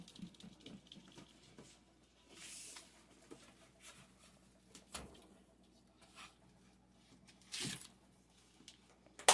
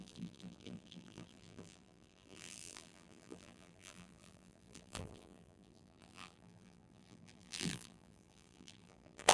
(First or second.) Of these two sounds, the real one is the first